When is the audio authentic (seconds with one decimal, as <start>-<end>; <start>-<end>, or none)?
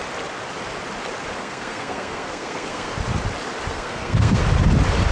0.0-1.4; 2.9-3.7; 4.4-5.1